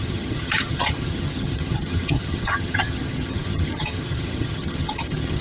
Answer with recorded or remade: remade